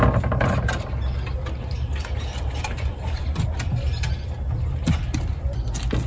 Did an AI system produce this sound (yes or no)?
no